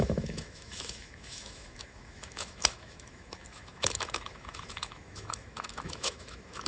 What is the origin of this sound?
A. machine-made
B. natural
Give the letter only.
A